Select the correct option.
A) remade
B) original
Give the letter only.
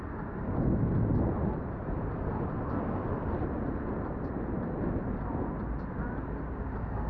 B